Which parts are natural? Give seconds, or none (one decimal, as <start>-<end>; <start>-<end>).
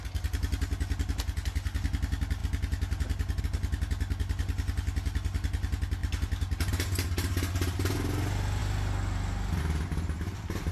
0.0-6.0; 6.7-10.7